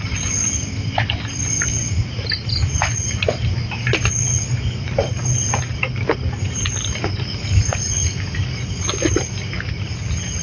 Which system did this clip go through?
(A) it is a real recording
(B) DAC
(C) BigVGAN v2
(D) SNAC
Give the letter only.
A